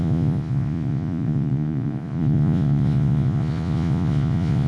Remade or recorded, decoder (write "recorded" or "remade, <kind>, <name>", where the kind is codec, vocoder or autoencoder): remade, vocoder, Vocos